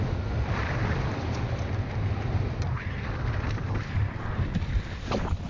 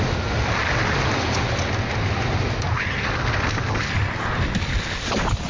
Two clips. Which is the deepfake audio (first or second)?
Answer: first